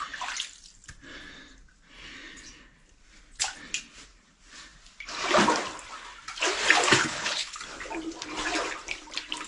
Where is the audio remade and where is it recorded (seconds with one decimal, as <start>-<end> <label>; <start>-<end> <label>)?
0.0-7.0 recorded; 7.0-7.6 remade; 7.6-9.5 recorded